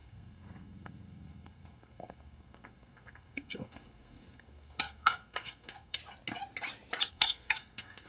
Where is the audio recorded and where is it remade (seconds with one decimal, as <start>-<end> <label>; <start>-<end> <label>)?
0.0-6.0 remade; 6.0-7.1 recorded; 7.1-8.1 remade